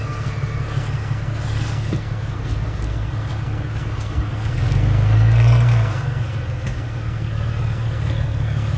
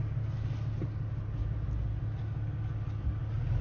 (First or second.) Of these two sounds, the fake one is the first